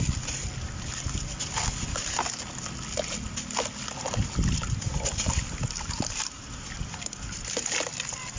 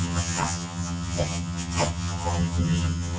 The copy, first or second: second